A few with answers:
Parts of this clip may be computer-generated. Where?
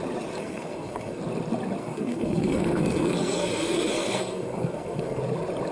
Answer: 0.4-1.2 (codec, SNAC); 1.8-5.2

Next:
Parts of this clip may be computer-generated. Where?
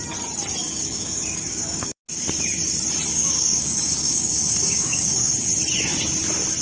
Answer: 0.6-2.0 (codec, DAC); 3.1-5.3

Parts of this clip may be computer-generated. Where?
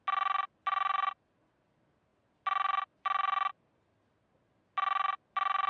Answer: 0.7-1.6 (vocoder, BigVGAN v2)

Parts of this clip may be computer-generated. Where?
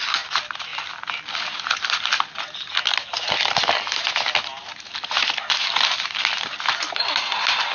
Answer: none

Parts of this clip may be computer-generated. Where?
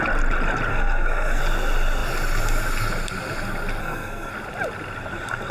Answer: 0.7-1.4 (codec, SNAC); 3.8-4.3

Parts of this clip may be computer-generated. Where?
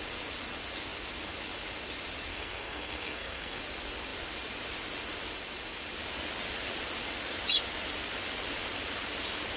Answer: 2.3-3.6 (codec, SNAC)